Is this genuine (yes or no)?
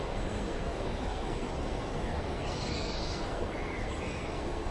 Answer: no